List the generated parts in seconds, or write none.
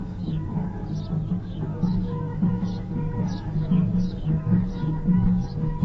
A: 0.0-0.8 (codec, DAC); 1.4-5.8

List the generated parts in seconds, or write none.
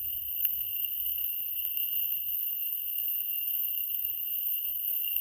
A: 0.0-5.2 (codec, SNAC)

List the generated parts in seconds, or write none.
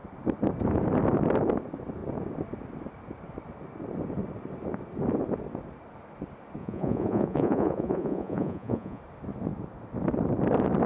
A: 6.6-9.0 (vocoder, Vocos)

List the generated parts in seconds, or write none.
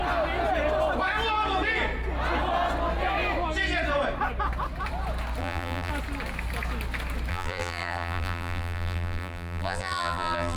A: 5.4-5.9 (vocoder, BigVGAN v2); 7.3-10.6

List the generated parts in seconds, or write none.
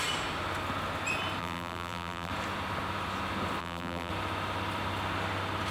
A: 1.4-2.3 (vocoder, BigVGAN v2); 3.6-4.1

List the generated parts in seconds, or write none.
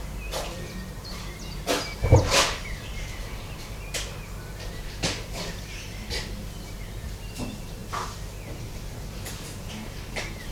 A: none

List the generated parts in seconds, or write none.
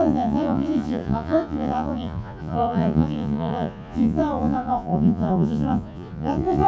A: 0.0-6.7 (vocoder, Vocos)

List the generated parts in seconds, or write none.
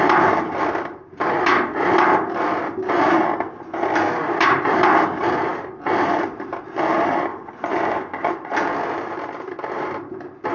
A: 7.3-8.5 (vocoder, Vocos)